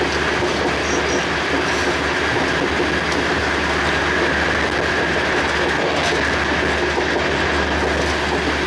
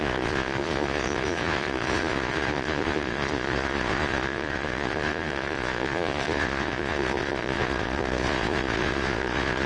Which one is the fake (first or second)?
second